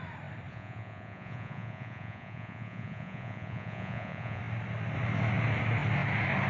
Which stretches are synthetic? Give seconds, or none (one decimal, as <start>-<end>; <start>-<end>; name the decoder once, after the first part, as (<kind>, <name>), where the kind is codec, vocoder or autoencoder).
0.5-4.4 (vocoder, Vocos)